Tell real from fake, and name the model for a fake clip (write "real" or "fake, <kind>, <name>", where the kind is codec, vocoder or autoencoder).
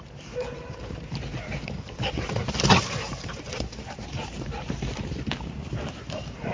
fake, vocoder, BigVGAN v2